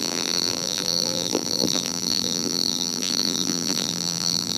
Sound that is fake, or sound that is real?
fake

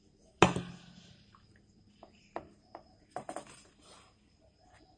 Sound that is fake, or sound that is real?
real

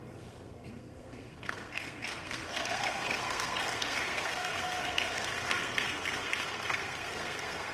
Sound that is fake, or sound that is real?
fake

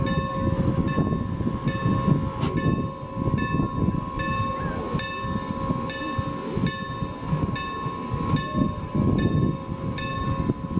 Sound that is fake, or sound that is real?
real